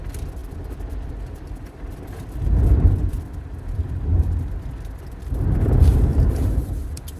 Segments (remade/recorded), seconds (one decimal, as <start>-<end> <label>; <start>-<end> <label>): 0.0-4.1 remade; 4.1-5.3 recorded; 5.3-7.2 remade